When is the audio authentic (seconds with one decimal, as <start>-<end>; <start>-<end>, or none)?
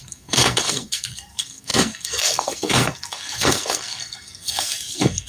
none